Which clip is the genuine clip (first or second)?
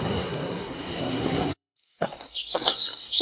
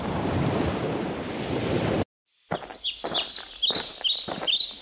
second